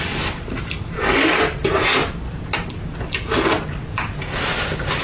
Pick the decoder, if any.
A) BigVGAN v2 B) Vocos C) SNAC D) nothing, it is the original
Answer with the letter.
D